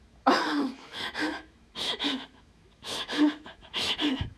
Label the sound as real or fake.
fake